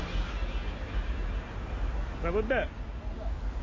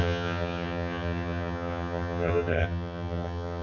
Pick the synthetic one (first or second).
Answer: second